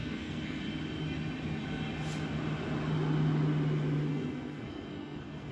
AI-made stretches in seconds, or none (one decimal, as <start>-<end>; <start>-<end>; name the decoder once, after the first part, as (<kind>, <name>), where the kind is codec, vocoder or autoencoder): 0.0-0.6 (codec, SNAC); 4.1-5.5